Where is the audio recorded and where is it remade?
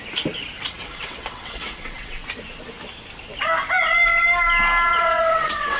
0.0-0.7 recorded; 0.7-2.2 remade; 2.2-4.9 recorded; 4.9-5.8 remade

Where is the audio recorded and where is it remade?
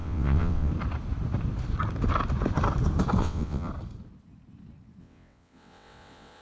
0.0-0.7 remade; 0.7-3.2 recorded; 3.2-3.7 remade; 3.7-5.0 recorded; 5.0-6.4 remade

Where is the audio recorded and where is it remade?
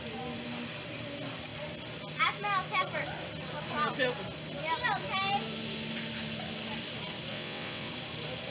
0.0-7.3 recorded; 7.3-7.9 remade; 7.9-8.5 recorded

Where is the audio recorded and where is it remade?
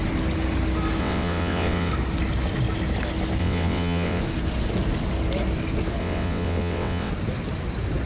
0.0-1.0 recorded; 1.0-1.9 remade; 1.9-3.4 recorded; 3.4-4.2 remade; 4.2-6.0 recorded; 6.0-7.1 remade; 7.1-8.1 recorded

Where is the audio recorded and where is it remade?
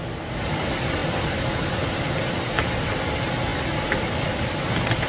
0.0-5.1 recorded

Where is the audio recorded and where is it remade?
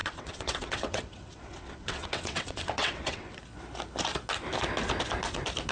0.0-3.4 remade; 3.4-5.7 recorded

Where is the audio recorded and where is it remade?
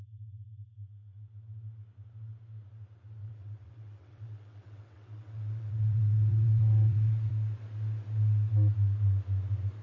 0.0-3.2 recorded; 3.2-7.3 remade; 7.3-9.8 recorded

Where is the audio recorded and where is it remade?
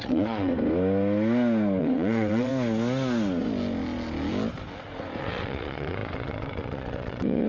0.0-0.5 remade; 0.5-1.8 recorded; 1.8-2.5 remade; 2.5-5.2 recorded; 5.2-7.5 remade